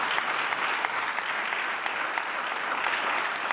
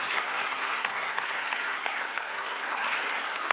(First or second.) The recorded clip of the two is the first